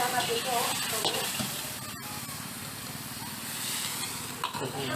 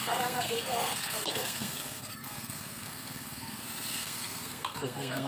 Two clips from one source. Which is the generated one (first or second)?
second